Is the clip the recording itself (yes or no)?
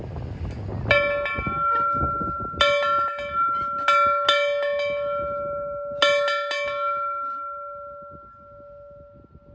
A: yes